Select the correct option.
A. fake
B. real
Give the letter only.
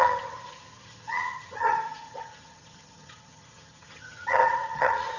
A